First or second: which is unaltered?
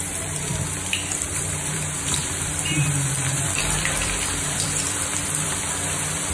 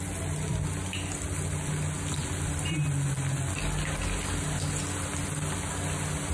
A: second